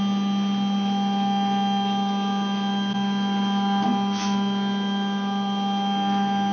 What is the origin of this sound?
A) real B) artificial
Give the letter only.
A